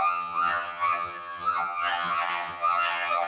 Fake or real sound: fake